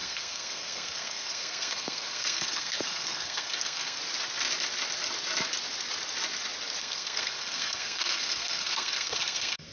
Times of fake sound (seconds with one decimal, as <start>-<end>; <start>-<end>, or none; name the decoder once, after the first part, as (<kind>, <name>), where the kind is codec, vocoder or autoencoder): 0.0-4.0 (codec, SNAC); 6.8-9.7